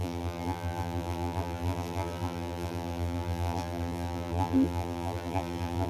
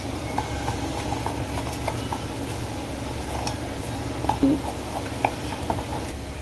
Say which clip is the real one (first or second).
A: second